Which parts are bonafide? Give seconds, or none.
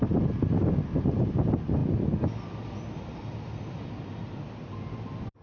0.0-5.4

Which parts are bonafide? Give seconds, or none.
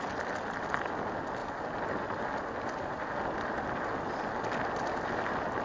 0.0-5.6